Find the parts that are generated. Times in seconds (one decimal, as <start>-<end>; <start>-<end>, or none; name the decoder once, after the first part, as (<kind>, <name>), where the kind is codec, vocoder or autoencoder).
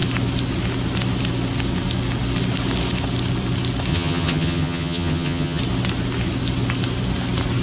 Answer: 3.9-5.6 (vocoder, HiFi-GAN)